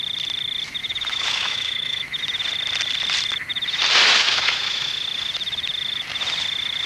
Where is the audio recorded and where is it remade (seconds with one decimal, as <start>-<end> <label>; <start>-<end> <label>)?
0.0-0.8 recorded; 0.8-2.2 remade; 2.2-4.2 recorded; 4.2-4.9 remade; 4.9-6.9 recorded